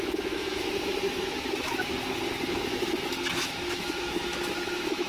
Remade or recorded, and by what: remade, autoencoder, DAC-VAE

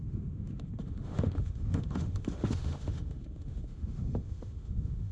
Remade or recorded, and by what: remade, autoencoder, DAC-VAE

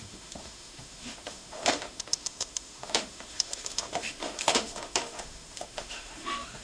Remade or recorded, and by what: remade, autoencoder, DAC-VAE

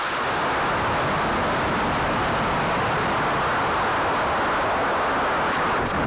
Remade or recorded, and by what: recorded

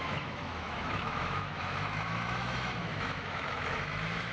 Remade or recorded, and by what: remade, autoencoder, DAC-VAE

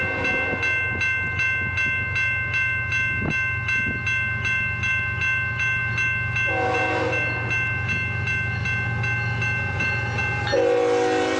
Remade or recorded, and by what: recorded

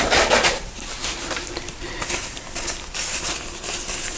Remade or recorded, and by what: recorded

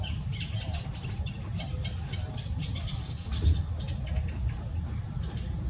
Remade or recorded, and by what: recorded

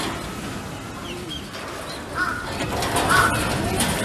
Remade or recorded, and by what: recorded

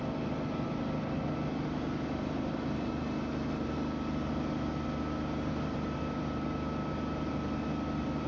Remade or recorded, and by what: recorded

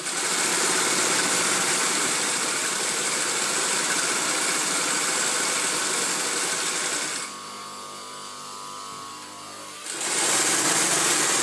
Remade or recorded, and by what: recorded